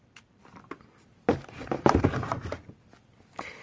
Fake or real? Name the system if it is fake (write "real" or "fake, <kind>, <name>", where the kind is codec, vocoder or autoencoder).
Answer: fake, vocoder, BigVGAN v2